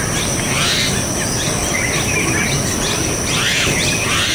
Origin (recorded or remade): recorded